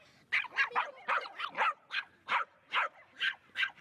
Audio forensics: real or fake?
real